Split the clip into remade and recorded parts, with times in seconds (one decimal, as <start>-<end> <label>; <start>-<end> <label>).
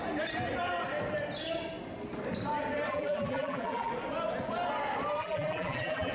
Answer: 0.0-2.9 recorded; 2.9-3.9 remade; 3.9-5.2 recorded; 5.2-6.1 remade